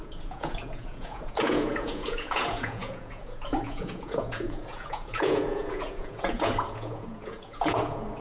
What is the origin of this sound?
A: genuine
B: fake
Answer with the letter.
B